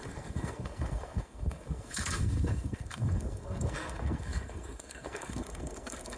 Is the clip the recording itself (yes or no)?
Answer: no